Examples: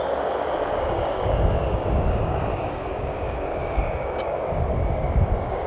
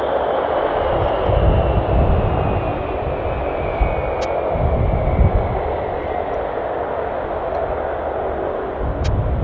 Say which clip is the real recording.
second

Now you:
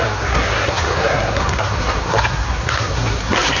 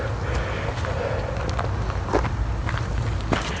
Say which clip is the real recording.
second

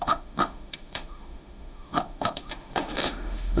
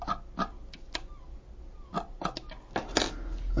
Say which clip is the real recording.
second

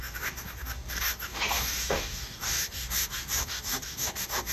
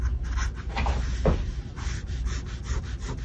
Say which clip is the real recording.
second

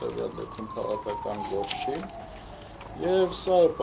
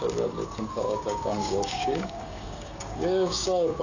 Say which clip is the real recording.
first